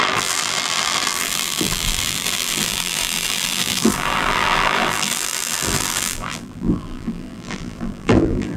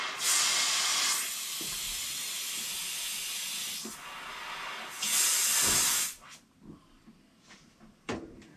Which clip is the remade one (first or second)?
first